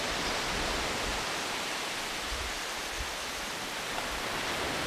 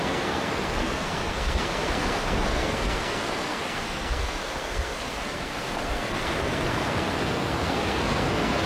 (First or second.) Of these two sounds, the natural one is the first